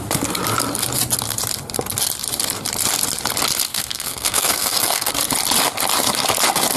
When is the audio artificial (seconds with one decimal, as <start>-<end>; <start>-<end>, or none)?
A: 3.7-5.1